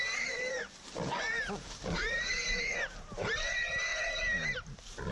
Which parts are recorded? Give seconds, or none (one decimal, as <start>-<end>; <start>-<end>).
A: 3.9-5.1